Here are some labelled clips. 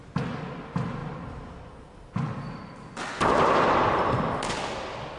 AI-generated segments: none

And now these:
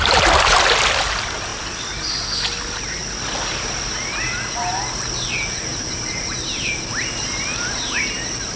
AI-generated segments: 5.7-7.4 (vocoder, BigVGAN v2)

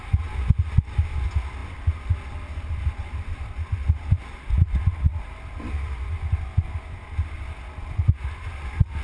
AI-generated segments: none

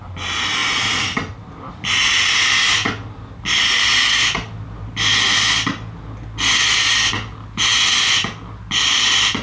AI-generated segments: none

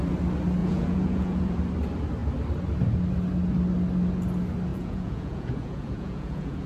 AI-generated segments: 0.6-1.6 (vocoder, Vocos); 4.7-6.7

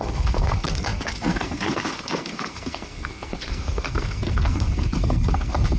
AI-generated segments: 0.0-5.8 (codec, SNAC)